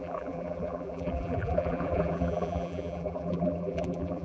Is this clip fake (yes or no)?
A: yes